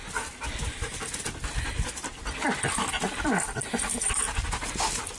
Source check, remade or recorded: recorded